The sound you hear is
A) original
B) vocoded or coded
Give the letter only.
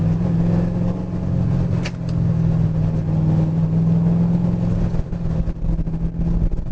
A